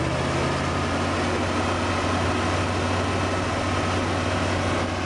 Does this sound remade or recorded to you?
recorded